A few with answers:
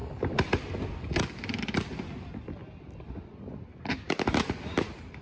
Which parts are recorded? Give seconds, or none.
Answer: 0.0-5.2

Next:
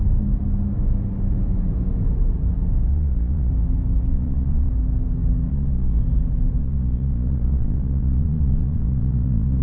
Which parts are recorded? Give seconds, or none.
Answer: 0.0-2.9; 3.5-4.1; 4.7-5.5; 6.0-6.6

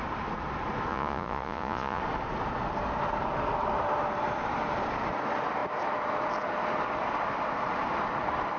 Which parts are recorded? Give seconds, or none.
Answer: 0.0-0.9; 2.0-8.6

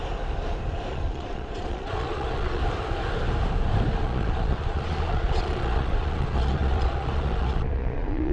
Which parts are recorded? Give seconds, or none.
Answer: 0.0-0.9; 2.6-4.0